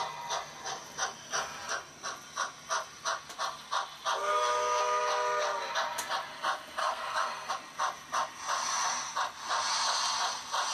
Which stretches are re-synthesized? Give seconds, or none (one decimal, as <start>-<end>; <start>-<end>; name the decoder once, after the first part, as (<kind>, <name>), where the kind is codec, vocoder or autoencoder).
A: 4.3-4.8 (codec, SNAC); 6.8-7.5

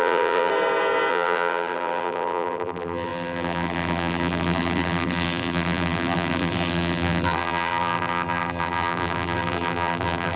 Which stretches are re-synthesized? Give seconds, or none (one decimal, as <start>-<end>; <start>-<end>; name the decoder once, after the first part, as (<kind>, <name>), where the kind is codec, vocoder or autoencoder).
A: 0.0-0.5 (vocoder, BigVGAN v2); 1.1-10.4

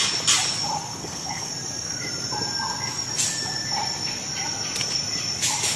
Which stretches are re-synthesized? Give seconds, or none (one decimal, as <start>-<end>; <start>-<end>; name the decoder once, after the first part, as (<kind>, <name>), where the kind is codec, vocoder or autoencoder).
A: 1.0-1.5 (codec, SNAC)

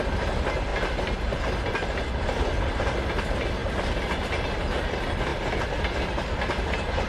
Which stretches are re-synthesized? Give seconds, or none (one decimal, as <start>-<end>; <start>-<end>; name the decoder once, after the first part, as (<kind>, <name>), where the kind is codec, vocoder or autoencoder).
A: none